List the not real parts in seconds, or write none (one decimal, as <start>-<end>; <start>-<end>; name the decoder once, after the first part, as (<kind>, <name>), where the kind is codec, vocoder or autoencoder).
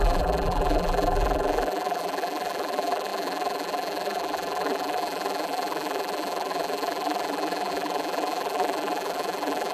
0.0-9.7 (vocoder, BigVGAN v2)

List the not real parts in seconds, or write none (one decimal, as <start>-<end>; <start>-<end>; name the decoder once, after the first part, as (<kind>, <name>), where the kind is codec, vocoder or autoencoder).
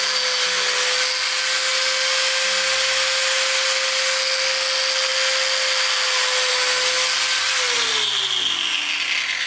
none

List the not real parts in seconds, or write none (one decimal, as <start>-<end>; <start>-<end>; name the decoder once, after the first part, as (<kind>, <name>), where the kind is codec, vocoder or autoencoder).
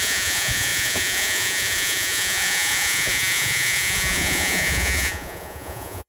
0.0-6.1 (vocoder, Vocos)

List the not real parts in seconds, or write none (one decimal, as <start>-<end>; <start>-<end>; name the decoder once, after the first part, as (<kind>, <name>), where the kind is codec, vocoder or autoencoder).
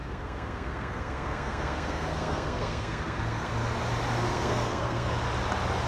0.0-3.5 (codec, SNAC); 4.3-5.1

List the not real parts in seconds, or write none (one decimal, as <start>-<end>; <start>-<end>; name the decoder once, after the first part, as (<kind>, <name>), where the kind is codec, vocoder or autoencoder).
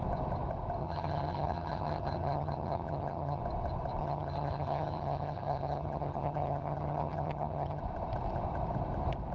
0.8-3.4 (vocoder, HiFi-GAN); 4.0-7.8